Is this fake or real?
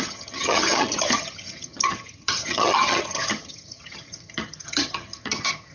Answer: fake